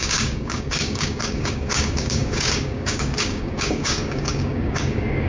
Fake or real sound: fake